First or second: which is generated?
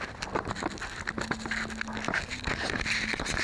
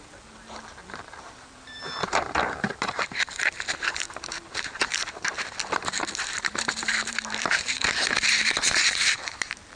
second